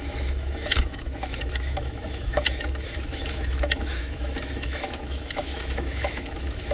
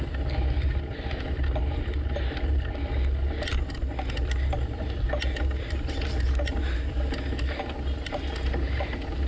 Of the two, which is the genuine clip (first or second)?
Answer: second